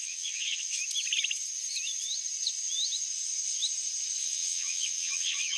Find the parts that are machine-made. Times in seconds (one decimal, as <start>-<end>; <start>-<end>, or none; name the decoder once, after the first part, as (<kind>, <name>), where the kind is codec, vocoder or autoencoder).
0.0-0.8 (vocoder, WaveNeXt); 4.2-5.6